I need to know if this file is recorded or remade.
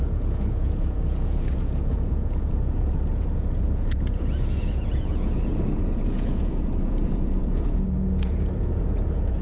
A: remade